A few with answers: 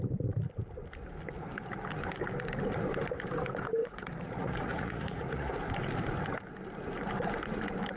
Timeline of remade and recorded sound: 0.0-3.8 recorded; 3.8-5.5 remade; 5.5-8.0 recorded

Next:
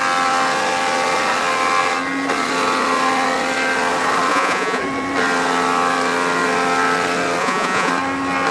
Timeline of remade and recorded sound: 0.0-4.3 recorded; 4.3-4.8 remade; 4.8-7.4 recorded; 7.4-7.9 remade; 7.9-8.5 recorded

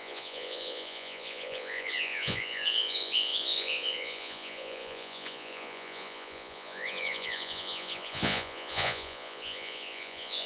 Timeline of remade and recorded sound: 0.0-10.5 remade

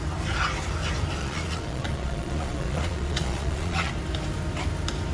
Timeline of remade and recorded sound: 0.0-1.2 recorded; 1.2-3.9 remade; 3.9-5.1 recorded

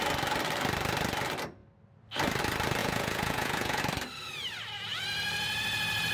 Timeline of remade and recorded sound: 0.0-2.8 recorded; 2.8-3.8 remade; 3.8-6.1 recorded

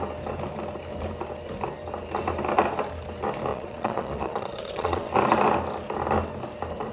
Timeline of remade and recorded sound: 0.0-3.5 recorded; 3.5-5.1 remade; 5.1-6.9 recorded

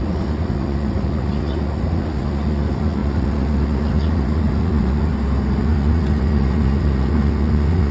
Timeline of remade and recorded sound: 0.0-5.1 remade; 5.1-5.6 recorded; 5.6-7.9 remade